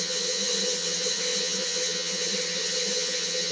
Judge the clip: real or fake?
fake